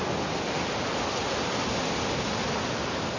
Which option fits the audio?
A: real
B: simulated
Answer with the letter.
A